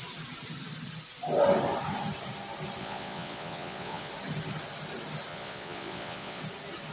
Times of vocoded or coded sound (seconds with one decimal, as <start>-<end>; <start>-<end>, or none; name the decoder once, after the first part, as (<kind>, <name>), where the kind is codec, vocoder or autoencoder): 2.8-4.1 (vocoder, WaveNeXt); 5.3-6.4